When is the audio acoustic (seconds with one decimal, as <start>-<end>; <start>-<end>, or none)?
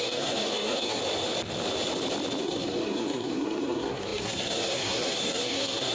1.0-2.4